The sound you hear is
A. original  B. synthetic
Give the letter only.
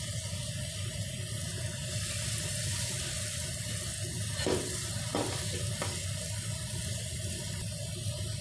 A